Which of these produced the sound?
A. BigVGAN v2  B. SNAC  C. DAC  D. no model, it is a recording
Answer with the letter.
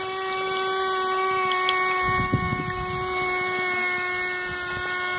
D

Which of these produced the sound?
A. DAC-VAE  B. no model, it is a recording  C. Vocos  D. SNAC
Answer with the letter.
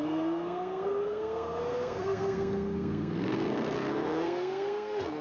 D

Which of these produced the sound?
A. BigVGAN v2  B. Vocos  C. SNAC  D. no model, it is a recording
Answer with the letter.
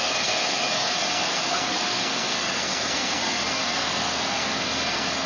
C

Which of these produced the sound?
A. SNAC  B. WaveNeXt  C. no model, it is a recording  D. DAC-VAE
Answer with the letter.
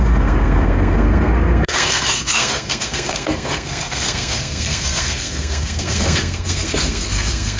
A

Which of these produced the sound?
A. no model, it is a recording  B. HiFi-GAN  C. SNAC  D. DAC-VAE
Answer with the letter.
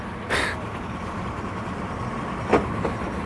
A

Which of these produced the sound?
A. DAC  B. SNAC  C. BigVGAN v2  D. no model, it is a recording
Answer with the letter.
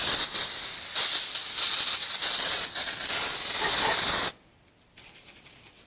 D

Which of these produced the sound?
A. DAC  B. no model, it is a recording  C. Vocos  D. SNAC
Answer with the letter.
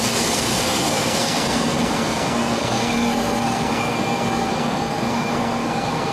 D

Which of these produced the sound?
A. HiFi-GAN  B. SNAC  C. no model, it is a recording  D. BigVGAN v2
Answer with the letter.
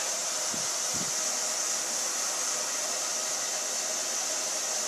C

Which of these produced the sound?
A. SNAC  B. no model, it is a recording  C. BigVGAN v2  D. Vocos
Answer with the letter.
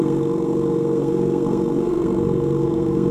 A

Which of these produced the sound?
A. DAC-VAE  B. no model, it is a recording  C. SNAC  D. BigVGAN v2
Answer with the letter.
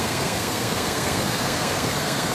C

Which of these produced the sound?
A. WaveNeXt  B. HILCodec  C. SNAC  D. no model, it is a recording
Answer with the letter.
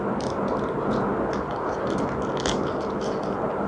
D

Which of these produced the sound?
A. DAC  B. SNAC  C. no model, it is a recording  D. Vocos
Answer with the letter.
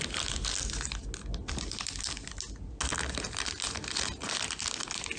C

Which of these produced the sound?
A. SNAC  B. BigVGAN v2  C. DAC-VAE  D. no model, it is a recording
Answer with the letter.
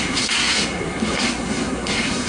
A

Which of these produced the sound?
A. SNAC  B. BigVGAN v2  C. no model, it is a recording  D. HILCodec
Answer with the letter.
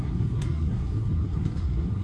A